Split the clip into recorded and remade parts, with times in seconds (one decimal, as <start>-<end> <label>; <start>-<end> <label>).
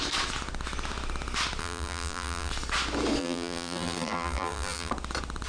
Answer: 0.0-1.6 recorded; 1.6-2.5 remade; 2.5-3.2 recorded; 3.2-4.9 remade; 4.9-5.5 recorded